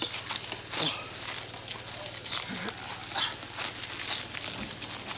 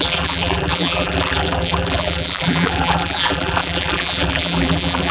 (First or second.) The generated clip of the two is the second